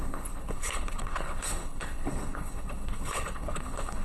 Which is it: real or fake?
fake